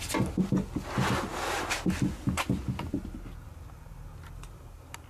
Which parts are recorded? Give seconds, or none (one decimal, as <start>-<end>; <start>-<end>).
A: 0.0-5.1